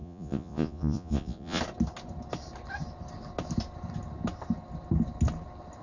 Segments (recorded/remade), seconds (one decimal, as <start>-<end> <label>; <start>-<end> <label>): 0.0-1.6 remade; 1.6-5.8 recorded